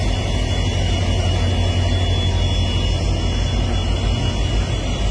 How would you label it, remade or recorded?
recorded